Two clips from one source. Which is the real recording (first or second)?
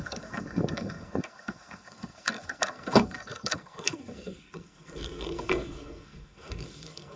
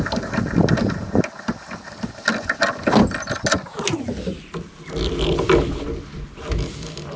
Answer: second